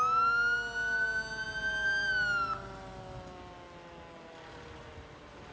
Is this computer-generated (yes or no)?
no